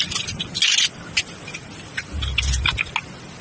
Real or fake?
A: real